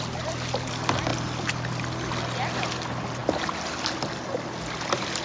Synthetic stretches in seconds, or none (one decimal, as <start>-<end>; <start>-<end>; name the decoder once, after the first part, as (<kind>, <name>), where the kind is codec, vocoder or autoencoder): none

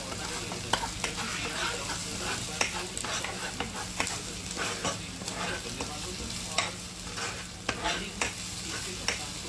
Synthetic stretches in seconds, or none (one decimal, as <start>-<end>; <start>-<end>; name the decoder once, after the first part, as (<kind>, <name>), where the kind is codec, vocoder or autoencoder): none